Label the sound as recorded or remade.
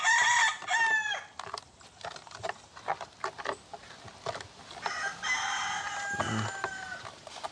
recorded